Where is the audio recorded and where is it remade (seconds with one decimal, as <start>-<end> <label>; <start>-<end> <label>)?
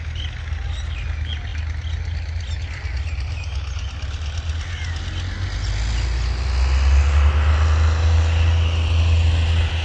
0.0-9.8 recorded